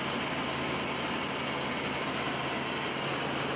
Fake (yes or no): no